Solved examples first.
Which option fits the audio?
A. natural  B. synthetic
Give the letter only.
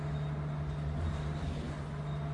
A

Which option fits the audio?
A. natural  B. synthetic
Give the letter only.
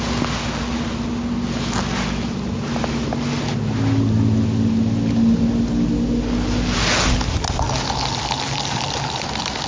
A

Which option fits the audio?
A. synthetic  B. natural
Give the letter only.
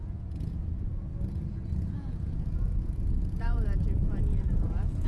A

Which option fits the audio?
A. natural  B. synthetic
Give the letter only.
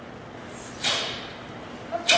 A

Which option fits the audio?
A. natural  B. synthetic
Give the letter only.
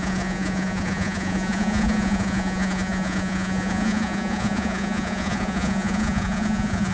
B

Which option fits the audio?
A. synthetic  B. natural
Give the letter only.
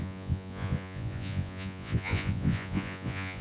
A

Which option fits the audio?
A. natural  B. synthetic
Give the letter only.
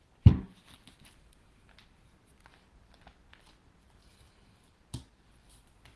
A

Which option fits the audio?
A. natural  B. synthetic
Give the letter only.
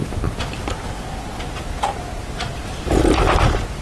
A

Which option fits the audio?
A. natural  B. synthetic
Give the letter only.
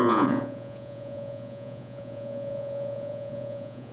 B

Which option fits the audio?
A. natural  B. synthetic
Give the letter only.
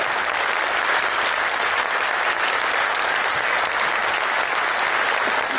A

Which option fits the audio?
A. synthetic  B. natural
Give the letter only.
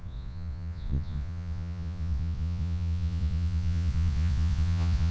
A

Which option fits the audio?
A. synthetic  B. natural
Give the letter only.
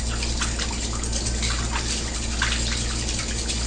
B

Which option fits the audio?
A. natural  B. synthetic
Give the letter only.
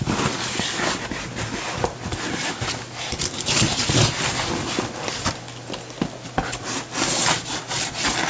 A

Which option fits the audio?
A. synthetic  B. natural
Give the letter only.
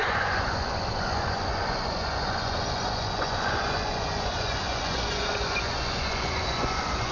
A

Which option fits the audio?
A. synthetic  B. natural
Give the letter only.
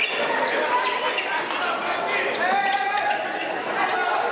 B